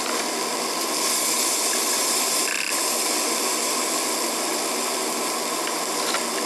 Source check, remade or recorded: recorded